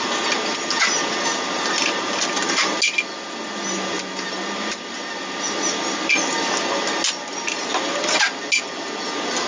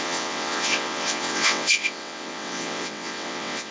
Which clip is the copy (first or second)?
second